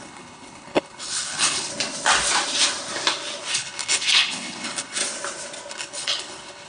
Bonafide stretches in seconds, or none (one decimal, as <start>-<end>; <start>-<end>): 1.7-3.5; 5.0-5.7